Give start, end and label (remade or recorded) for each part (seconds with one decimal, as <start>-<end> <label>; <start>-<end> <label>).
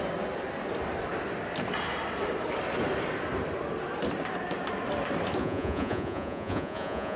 0.0-5.4 recorded; 5.4-7.2 remade